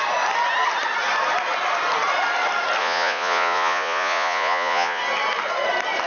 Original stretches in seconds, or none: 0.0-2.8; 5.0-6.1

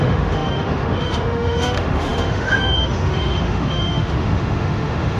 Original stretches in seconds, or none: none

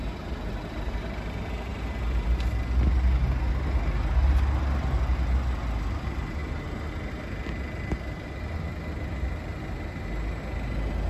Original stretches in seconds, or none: 0.0-11.1

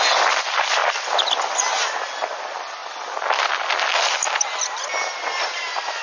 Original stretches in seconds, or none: 0.0-6.0

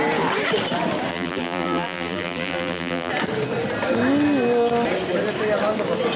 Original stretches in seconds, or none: 0.0-1.1; 3.1-6.2

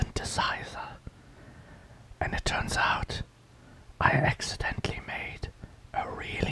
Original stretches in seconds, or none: 0.0-6.5

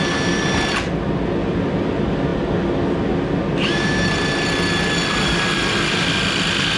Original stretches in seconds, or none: 0.0-6.8

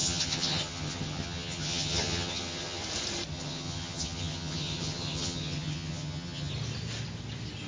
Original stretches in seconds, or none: 2.8-3.3; 6.5-7.7